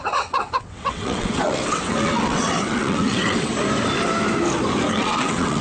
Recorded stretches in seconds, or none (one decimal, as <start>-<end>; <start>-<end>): 3.5-4.9